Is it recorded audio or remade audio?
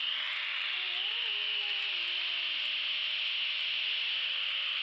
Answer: recorded